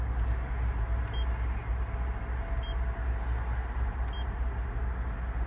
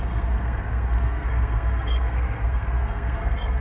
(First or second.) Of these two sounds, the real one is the first